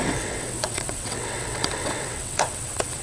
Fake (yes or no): yes